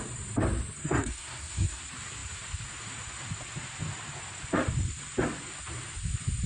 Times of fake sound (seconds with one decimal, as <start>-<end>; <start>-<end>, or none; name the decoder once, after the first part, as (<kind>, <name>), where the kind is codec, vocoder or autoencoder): 0.8-1.8 (codec, SNAC)